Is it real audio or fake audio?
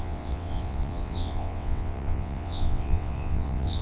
fake